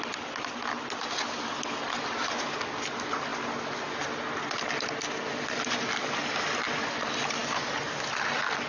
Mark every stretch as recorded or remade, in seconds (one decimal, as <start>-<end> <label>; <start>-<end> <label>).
0.0-8.7 recorded